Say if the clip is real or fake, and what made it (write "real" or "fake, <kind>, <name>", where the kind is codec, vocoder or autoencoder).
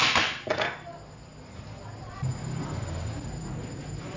real